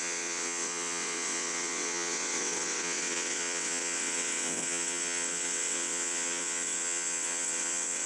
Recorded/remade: remade